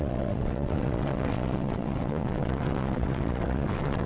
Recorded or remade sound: remade